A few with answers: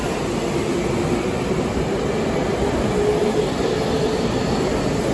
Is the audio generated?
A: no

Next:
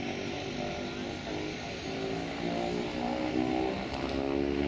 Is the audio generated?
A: no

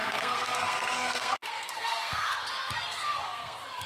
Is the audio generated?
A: yes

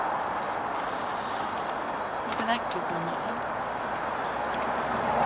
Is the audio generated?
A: no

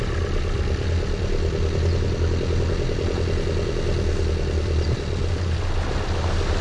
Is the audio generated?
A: no